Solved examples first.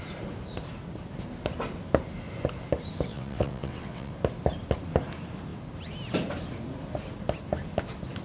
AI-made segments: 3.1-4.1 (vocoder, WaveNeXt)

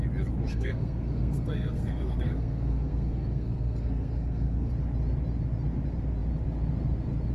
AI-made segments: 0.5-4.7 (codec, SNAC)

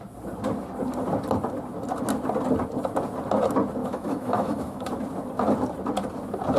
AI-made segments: 3.8-4.9 (autoencoder, DAC-VAE)

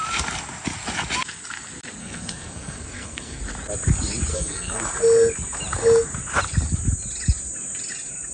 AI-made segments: 2.0-3.4 (codec, SNAC); 4.3-4.8